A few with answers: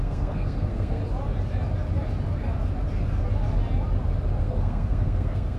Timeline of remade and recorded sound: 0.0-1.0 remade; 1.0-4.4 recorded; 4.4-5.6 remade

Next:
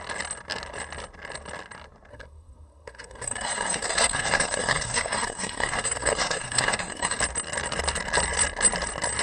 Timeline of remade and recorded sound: 0.0-2.1 recorded; 2.1-7.2 remade; 7.2-9.2 recorded

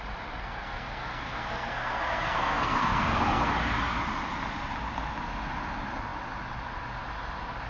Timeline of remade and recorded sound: 0.0-0.4 recorded; 0.4-3.5 remade; 3.5-7.7 recorded

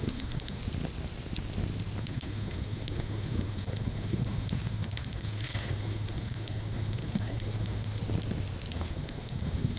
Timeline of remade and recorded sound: 0.0-0.6 remade; 0.6-2.0 recorded; 2.0-8.0 remade; 8.0-8.7 recorded; 8.7-9.8 remade

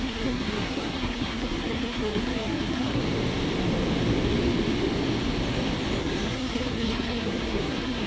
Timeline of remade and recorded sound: 0.0-3.0 remade; 3.0-6.0 recorded; 6.0-8.1 remade

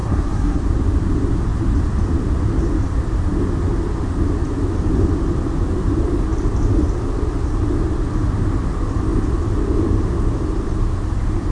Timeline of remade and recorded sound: 0.0-0.6 remade; 0.6-11.5 recorded

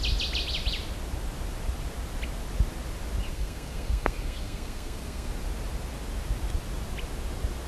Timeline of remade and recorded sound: 0.0-3.3 recorded; 3.3-5.3 remade; 5.3-7.7 recorded